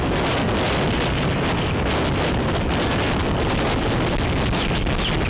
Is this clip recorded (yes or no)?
yes